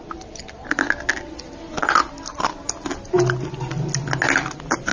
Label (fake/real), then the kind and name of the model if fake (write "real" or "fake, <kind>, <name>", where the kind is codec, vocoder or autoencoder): real